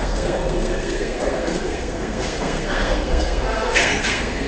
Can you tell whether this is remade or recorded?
remade